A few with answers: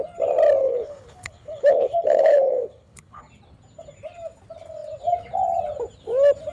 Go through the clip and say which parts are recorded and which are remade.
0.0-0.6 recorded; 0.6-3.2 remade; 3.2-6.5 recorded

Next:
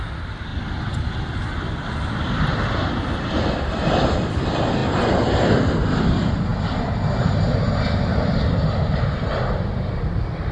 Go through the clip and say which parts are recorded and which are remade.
0.0-6.5 remade; 6.5-8.7 recorded; 8.7-10.5 remade

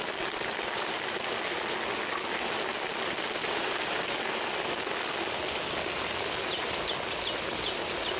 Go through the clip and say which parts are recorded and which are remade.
0.0-3.4 recorded; 3.4-4.2 remade; 4.2-8.2 recorded

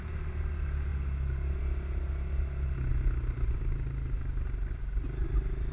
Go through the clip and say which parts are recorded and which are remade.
0.0-5.7 recorded

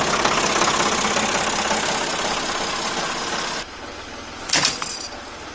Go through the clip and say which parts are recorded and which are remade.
0.0-5.5 recorded